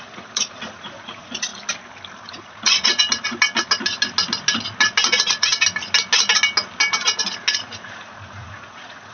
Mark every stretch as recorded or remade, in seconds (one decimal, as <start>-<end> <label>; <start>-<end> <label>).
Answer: 0.0-1.5 remade; 1.5-2.3 recorded; 2.3-2.9 remade; 2.9-7.5 recorded; 7.5-9.1 remade